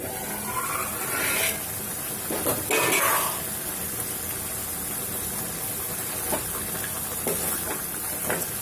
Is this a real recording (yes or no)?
yes